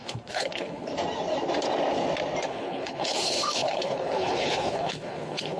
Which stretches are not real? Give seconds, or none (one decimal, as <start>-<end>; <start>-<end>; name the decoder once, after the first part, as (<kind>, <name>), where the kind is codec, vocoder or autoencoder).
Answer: 0.0-0.9 (codec, HILCodec); 2.4-5.6